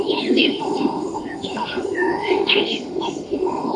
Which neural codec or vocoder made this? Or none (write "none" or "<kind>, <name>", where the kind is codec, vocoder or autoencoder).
autoencoder, DAC-VAE